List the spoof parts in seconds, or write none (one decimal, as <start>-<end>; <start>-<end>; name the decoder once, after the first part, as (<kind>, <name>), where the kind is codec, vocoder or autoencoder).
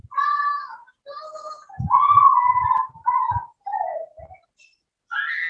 0.0-3.3 (vocoder, BigVGAN v2); 3.7-5.1